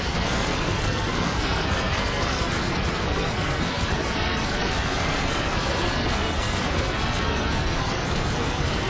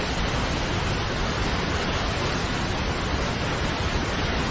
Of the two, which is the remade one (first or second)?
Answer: first